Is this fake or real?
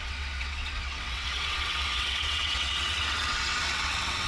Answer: fake